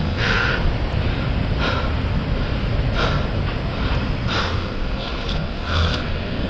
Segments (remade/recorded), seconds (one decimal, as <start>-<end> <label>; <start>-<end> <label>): 0.0-0.5 remade; 0.5-4.4 recorded; 4.4-6.5 remade

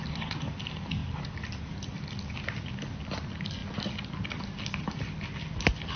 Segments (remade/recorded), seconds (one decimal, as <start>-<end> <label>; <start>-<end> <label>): 0.0-6.0 recorded